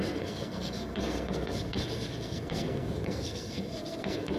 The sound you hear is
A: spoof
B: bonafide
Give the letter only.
A